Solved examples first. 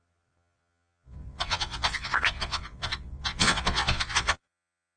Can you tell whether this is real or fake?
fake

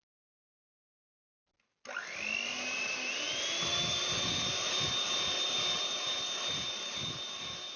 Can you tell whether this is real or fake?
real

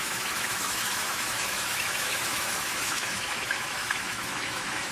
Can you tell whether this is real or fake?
fake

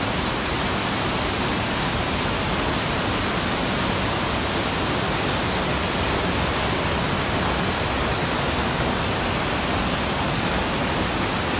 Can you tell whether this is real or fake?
real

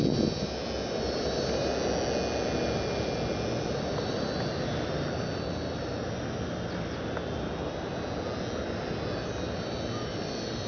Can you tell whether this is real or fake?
real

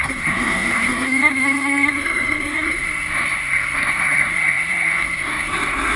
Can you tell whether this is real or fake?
fake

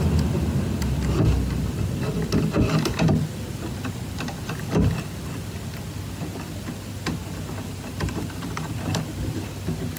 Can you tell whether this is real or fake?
real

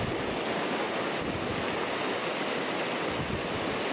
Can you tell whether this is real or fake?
real